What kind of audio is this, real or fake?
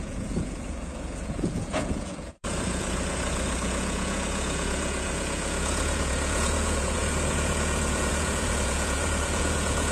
fake